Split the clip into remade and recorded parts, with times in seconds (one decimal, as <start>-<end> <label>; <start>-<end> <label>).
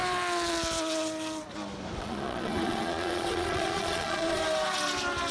0.0-2.0 recorded; 2.0-4.4 remade; 4.4-5.3 recorded